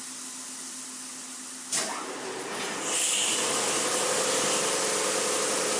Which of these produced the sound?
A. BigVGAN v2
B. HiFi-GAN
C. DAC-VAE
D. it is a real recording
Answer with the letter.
D